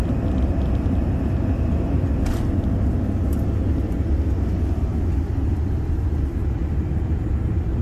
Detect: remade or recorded recorded